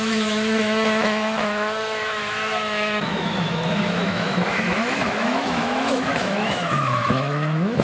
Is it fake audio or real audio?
fake